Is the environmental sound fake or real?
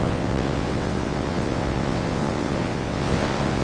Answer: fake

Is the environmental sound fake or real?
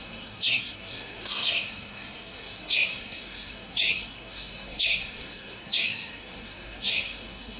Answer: fake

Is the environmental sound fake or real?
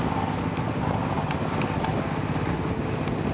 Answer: real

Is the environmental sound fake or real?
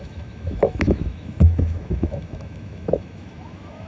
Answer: fake